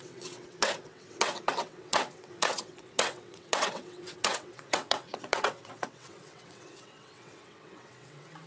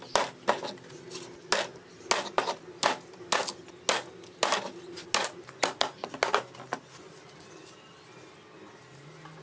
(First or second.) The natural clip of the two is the second